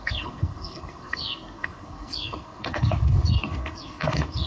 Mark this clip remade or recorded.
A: remade